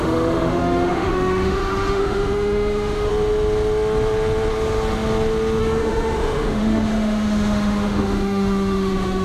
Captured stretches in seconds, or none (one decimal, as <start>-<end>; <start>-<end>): 3.1-5.6